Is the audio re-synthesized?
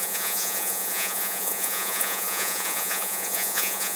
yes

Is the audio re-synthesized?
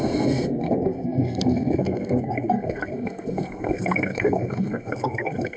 yes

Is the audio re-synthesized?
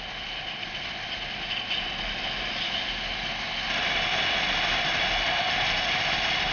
no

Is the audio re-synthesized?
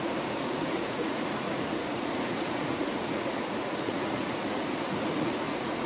yes